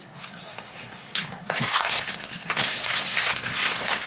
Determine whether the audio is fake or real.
fake